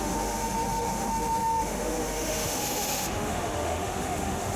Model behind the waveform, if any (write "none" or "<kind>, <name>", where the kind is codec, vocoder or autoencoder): autoencoder, DAC-VAE